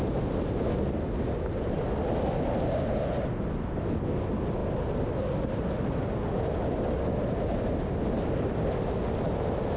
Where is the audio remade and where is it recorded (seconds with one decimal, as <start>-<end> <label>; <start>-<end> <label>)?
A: 0.0-9.8 recorded